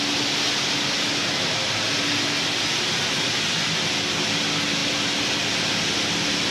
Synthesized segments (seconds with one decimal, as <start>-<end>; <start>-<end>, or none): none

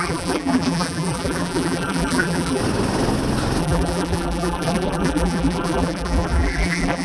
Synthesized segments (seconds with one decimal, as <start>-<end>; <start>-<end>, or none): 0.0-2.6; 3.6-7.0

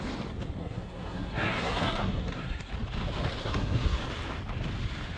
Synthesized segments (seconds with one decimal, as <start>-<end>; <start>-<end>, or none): 0.6-2.7; 3.4-4.0

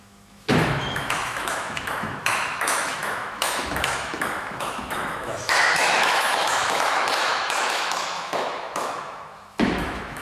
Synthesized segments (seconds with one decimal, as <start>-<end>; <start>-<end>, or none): 0.0-10.2